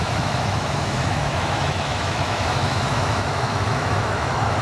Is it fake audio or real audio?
fake